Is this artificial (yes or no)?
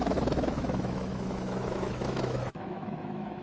yes